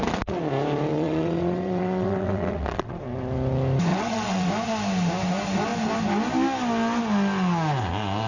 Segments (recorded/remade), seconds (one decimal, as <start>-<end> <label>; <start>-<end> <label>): 0.0-0.9 recorded; 0.9-3.0 remade; 3.0-3.9 recorded; 3.9-4.5 remade; 4.5-8.3 recorded